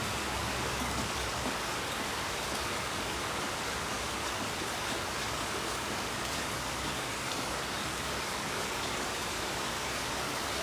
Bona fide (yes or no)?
no